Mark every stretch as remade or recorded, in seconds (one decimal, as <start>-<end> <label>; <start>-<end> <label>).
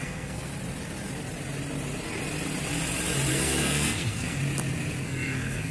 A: 0.0-0.5 remade; 0.5-3.3 recorded; 3.3-4.4 remade; 4.4-5.0 recorded; 5.0-5.7 remade